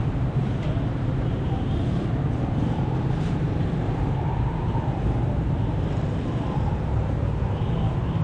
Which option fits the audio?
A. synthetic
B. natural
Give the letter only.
A